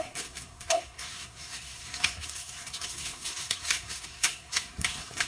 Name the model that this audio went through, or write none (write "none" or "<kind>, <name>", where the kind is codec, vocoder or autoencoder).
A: codec, SNAC